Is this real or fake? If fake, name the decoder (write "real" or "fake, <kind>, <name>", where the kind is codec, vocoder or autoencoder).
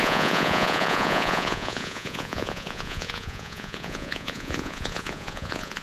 fake, vocoder, Vocos